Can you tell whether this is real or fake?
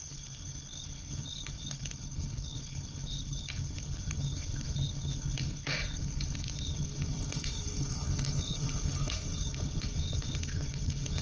fake